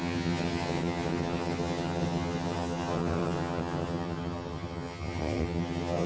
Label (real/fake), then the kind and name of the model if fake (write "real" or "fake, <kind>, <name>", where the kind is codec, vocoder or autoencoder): fake, vocoder, HiFi-GAN